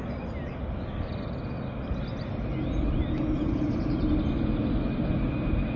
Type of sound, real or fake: real